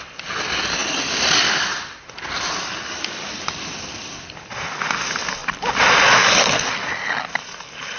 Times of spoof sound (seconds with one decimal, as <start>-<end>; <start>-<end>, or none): 0.8-4.7; 5.4-6.5; 6.9-7.5